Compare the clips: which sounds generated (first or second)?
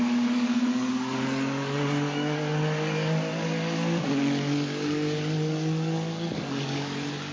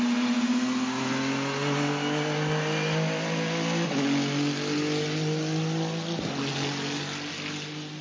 first